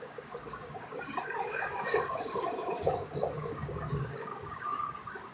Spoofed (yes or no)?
yes